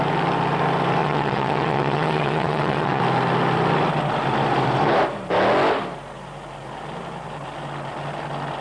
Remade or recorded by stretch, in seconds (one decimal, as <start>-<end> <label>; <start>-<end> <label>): 0.0-1.0 recorded; 1.0-3.0 remade; 3.0-8.6 recorded